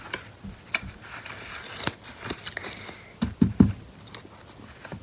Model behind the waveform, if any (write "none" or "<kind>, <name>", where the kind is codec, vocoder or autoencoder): none